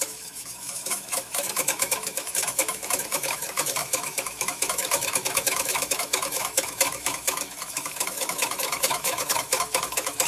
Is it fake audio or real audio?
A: fake